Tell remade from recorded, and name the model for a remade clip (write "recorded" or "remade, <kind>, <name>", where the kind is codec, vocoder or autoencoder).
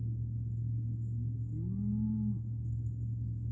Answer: remade, codec, DAC